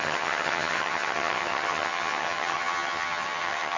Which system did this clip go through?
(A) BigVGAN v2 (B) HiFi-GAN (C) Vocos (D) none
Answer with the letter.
B